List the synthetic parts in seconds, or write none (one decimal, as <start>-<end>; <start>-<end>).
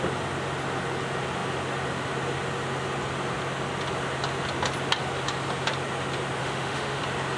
6.4-7.0